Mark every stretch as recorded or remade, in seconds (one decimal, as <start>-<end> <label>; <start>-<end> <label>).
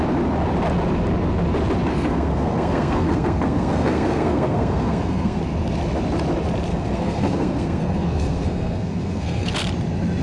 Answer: 0.0-1.9 recorded; 1.9-5.4 remade; 5.4-6.7 recorded; 6.7-9.5 remade; 9.5-10.2 recorded